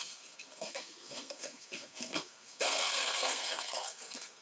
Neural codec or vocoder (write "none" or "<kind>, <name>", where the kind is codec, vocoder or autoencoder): codec, SNAC